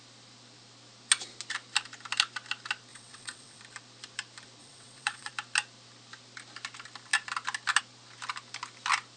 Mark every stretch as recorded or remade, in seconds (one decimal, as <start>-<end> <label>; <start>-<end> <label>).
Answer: 0.0-2.9 recorded; 2.9-3.6 remade; 3.6-4.6 recorded; 4.6-5.3 remade; 5.3-9.2 recorded